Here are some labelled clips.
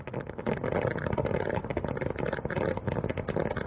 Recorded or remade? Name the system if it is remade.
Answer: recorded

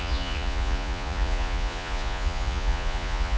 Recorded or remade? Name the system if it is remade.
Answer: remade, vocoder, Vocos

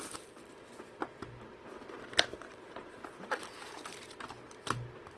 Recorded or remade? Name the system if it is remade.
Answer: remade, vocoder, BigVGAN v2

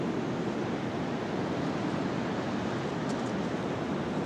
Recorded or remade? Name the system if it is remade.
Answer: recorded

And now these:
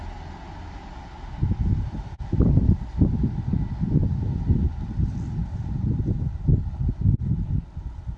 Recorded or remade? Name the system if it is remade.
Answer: recorded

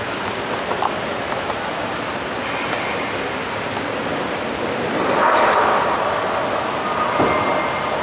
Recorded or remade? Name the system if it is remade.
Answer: recorded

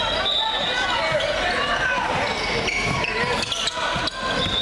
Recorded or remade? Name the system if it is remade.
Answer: recorded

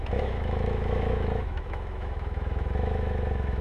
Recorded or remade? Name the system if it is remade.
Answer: remade, autoencoder, DAC-VAE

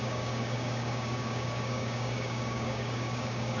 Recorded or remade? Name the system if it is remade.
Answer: remade, codec, DAC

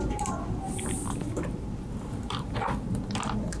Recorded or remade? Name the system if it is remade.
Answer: remade, vocoder, BigVGAN v2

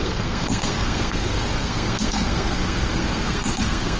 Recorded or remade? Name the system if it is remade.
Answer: remade, codec, SNAC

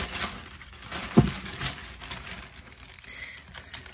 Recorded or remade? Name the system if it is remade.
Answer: recorded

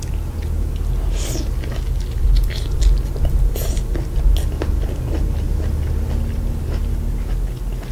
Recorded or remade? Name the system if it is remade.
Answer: recorded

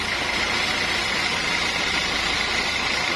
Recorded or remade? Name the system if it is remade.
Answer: recorded